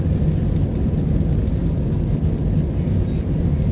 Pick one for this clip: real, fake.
real